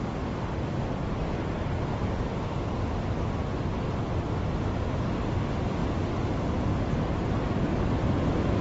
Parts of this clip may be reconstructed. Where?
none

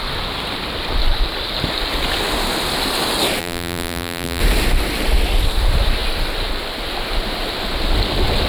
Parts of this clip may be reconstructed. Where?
3.4-4.4 (vocoder, BigVGAN v2)

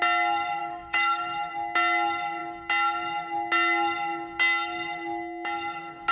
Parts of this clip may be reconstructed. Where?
0.6-1.5 (autoencoder, DAC-VAE)

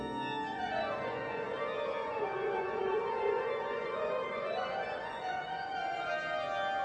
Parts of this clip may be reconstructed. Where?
0.5-1.6 (vocoder, Vocos); 2.0-6.1

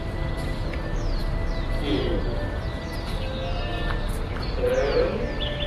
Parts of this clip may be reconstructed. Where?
none